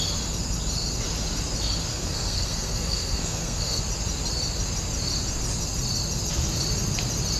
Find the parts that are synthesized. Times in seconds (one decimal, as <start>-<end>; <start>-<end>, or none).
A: 1.9-3.8